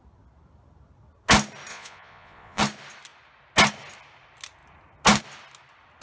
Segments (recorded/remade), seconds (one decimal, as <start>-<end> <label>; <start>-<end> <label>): 0.0-1.7 recorded; 1.7-2.6 remade; 2.6-6.0 recorded